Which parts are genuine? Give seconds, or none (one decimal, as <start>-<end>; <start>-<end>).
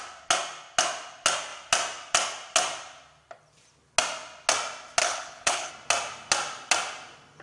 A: 0.0-5.0; 5.7-7.4